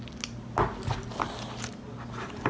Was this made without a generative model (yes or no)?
yes